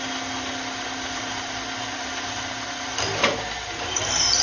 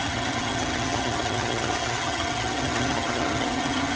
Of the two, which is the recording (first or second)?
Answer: first